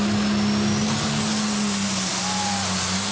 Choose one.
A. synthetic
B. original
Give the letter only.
B